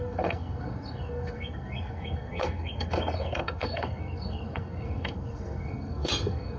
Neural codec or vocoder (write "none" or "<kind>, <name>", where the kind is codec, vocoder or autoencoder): codec, SNAC